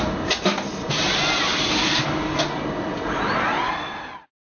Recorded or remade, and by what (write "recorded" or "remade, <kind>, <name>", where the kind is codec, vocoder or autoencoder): recorded